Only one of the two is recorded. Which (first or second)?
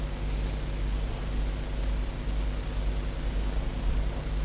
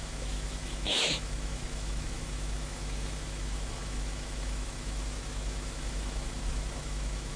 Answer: first